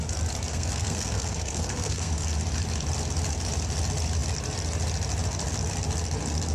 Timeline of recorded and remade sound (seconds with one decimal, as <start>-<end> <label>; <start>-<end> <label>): 0.0-0.5 recorded; 0.5-2.1 remade; 2.1-6.5 recorded

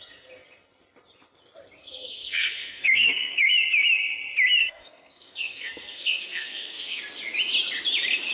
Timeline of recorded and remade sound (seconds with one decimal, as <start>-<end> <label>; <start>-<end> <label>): 0.0-1.8 recorded; 1.8-3.5 remade; 3.5-4.6 recorded; 4.6-7.0 remade; 7.0-8.3 recorded